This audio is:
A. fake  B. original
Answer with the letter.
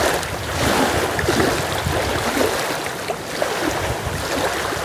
B